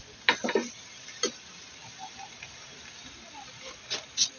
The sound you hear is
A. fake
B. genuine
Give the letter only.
B